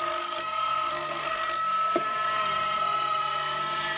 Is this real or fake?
fake